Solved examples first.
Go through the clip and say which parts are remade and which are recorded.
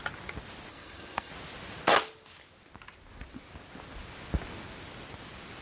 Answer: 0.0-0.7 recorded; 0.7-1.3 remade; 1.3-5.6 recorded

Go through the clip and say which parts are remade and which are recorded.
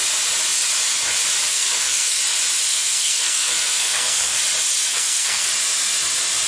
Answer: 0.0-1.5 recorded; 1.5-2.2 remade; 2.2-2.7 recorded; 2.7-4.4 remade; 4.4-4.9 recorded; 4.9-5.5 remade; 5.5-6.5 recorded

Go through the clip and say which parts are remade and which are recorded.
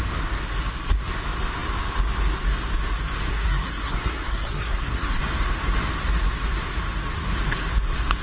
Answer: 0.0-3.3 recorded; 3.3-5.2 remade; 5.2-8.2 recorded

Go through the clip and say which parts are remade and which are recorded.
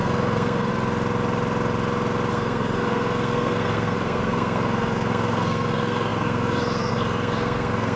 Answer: 0.0-0.7 remade; 0.7-2.3 recorded; 2.3-8.0 remade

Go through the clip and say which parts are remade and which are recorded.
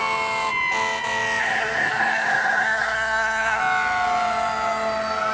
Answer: 0.0-1.4 recorded; 1.4-3.6 remade; 3.6-5.3 recorded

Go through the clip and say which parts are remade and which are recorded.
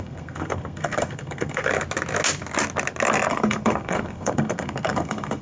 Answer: 0.0-1.7 remade; 1.7-3.3 recorded; 3.3-5.4 remade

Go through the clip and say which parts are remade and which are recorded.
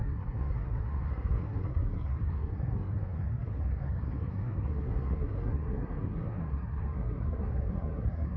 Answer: 0.0-8.4 remade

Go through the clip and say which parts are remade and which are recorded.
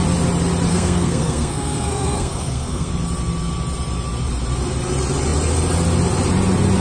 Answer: 0.0-0.7 recorded; 0.7-2.9 remade; 2.9-6.8 recorded